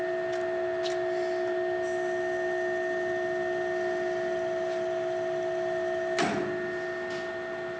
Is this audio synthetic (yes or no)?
no